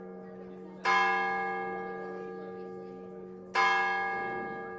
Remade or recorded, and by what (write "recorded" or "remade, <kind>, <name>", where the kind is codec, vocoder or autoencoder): recorded